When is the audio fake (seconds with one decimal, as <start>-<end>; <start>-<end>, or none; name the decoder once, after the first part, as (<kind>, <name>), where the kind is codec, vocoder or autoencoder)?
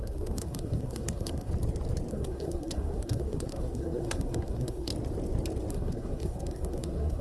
0.0-1.5 (codec, SNAC); 2.1-4.9; 5.7-7.2